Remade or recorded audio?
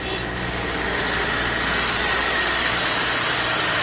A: recorded